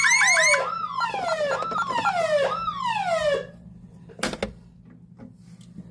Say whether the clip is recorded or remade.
recorded